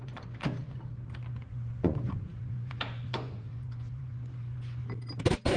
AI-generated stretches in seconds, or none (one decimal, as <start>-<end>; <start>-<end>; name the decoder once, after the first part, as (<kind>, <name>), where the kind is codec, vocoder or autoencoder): 0.0-0.5 (vocoder, Vocos); 1.5-4.8